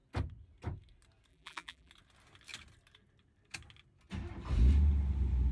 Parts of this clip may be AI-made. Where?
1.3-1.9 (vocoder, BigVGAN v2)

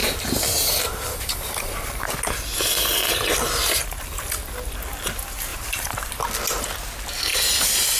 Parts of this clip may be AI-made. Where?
0.0-2.0 (vocoder, BigVGAN v2); 5.5-6.1